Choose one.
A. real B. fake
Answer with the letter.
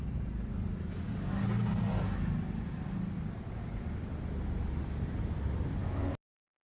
A